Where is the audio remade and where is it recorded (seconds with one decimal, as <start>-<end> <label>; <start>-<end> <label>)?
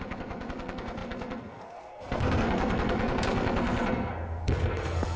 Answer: 0.0-5.2 remade